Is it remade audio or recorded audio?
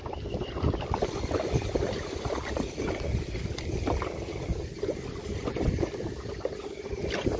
recorded